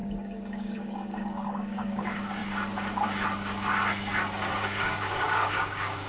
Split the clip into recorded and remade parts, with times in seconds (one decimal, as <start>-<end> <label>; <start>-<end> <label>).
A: 0.0-2.4 remade; 2.4-4.5 recorded; 4.5-6.1 remade

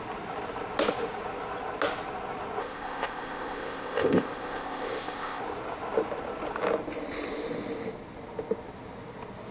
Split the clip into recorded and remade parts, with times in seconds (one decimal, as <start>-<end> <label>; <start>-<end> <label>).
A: 0.0-2.6 recorded; 2.6-5.4 remade; 5.4-9.5 recorded

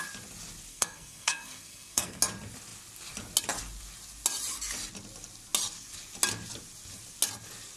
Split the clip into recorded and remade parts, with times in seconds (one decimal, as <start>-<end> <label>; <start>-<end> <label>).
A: 0.0-0.7 recorded; 0.7-2.2 remade; 2.2-7.8 recorded

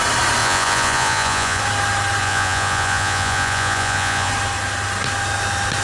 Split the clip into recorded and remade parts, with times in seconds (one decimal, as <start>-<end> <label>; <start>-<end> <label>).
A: 0.0-0.4 recorded; 0.4-1.6 remade; 1.6-2.2 recorded; 2.2-4.3 remade; 4.3-5.8 recorded

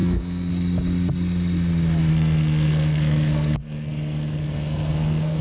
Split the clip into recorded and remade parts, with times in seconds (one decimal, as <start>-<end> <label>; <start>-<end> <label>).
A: 0.0-0.5 remade; 0.5-2.1 recorded; 2.1-5.4 remade